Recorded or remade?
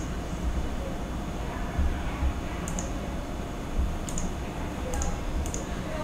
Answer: remade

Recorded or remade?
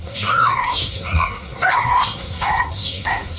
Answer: remade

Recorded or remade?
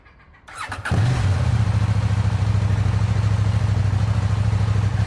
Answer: recorded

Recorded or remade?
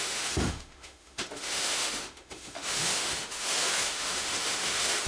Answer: remade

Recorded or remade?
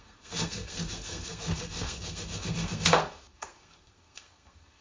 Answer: remade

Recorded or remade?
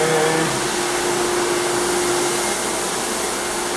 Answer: recorded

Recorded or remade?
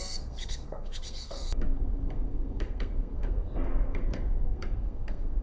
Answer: remade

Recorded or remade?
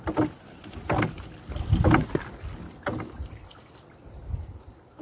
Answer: recorded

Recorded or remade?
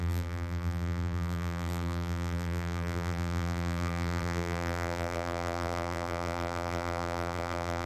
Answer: remade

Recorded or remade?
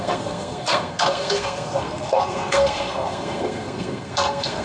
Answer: remade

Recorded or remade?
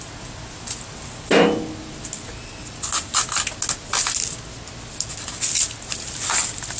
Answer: recorded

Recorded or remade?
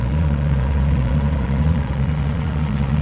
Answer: remade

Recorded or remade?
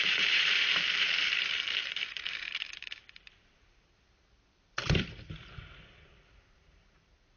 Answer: remade